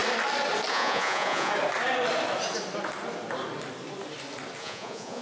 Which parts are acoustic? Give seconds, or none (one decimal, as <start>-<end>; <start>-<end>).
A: 0.0-0.7; 1.5-4.6